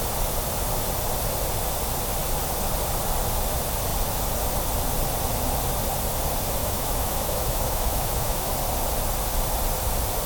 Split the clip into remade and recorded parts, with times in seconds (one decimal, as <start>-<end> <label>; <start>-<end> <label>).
0.0-6.6 recorded; 6.6-8.5 remade; 8.5-10.3 recorded